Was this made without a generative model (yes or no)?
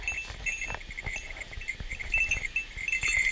yes